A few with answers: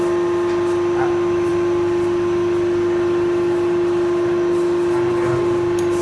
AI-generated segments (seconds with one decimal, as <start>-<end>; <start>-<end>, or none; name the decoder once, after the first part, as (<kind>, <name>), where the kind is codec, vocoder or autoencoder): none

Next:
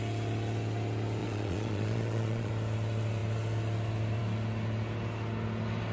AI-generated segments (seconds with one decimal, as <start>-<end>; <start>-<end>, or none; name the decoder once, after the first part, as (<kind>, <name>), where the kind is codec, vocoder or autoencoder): 1.2-2.5 (vocoder, Vocos)

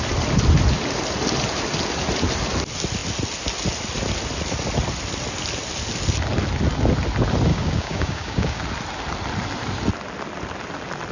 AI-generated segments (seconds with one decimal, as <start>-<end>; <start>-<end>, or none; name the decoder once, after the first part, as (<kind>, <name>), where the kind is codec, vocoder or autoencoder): 7.5-8.6 (codec, DAC)